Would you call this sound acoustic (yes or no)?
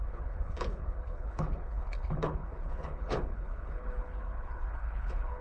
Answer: no